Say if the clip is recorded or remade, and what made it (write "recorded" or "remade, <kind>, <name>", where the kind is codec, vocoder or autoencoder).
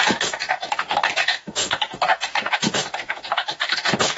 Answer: remade, autoencoder, DAC-VAE